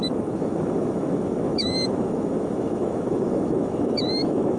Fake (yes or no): yes